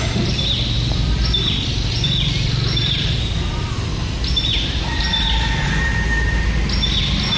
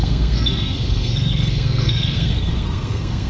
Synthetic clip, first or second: second